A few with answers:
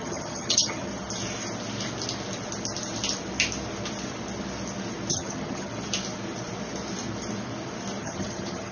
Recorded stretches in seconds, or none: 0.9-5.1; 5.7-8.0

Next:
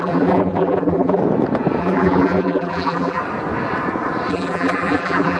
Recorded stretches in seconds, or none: 1.2-1.8; 3.2-4.3

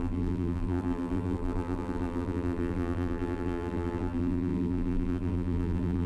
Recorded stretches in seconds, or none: none

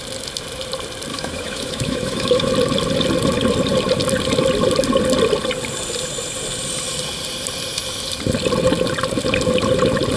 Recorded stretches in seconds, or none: 0.0-1.1; 2.5-10.2

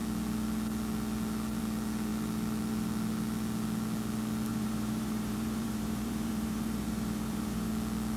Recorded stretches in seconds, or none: 0.0-4.5; 7.7-8.2

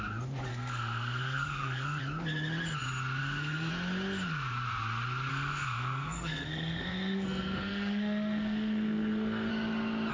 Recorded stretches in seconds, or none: 0.0-0.5; 2.0-3.2; 3.7-5.3; 9.5-10.1